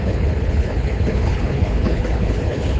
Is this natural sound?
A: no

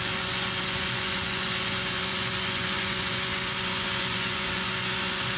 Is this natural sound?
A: no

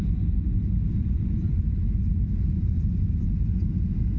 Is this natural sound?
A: yes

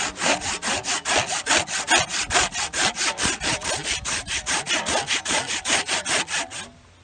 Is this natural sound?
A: yes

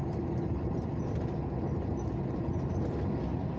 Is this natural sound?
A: yes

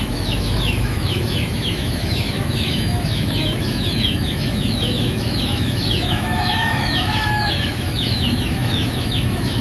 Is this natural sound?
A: no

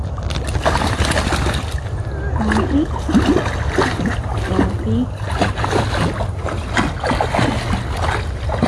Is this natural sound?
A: yes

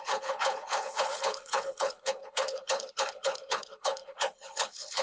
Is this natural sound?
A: no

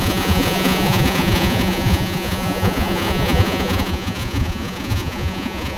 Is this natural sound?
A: no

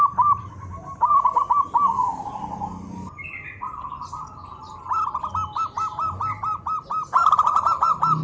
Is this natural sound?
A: yes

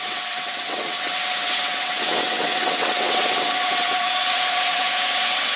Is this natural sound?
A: no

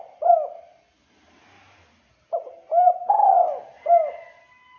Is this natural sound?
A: yes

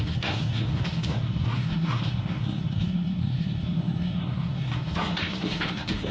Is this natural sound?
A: no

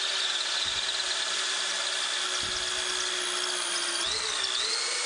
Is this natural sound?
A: yes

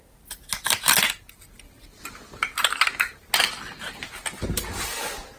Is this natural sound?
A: yes